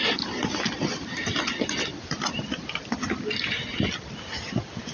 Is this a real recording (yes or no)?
yes